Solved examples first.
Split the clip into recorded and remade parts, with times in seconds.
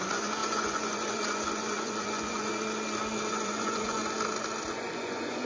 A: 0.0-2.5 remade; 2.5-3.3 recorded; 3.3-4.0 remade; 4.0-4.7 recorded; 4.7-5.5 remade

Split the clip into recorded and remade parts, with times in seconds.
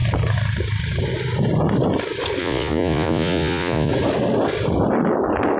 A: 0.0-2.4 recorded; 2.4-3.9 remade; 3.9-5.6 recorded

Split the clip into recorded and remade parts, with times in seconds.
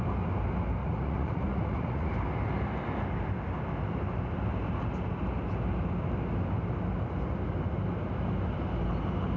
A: 0.0-0.8 recorded; 0.8-2.1 remade; 2.1-9.4 recorded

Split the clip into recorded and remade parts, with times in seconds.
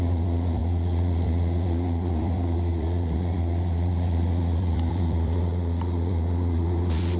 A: 0.0-7.2 remade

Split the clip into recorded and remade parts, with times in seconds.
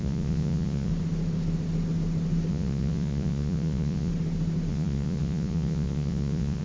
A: 0.0-0.9 remade; 0.9-2.5 recorded; 2.5-4.1 remade; 4.1-4.7 recorded; 4.7-6.6 remade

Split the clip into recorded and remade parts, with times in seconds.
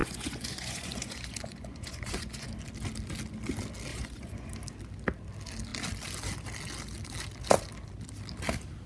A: 0.0-2.5 remade; 2.5-3.9 recorded; 3.9-4.5 remade; 4.5-8.9 recorded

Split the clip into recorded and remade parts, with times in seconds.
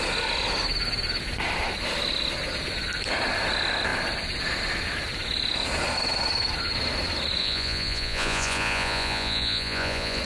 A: 0.0-7.4 recorded; 7.4-10.2 remade